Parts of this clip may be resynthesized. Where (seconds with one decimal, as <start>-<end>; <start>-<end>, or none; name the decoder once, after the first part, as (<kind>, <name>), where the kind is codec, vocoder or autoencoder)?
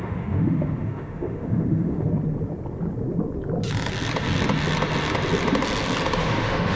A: 0.0-2.1 (autoencoder, DAC-VAE); 6.2-6.8